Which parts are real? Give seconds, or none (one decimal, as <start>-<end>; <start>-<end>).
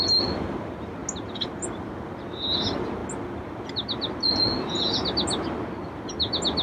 0.0-6.6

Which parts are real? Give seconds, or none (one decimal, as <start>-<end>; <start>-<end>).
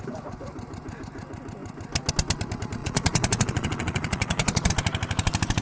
0.0-2.8; 4.7-5.6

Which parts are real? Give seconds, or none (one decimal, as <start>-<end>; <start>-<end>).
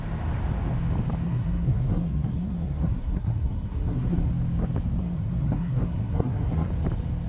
0.0-1.2; 4.3-5.0; 6.7-7.3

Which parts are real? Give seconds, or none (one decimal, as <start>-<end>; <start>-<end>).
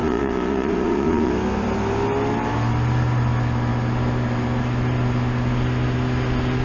1.3-6.6